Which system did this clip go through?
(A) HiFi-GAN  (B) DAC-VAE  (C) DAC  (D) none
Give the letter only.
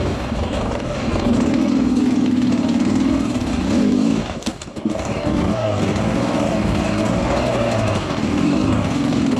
C